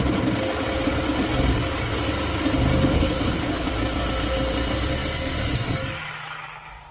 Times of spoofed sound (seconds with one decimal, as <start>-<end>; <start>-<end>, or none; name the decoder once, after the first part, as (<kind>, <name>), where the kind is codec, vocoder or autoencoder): 2.8-3.7 (codec, HILCodec)